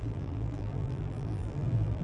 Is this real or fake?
fake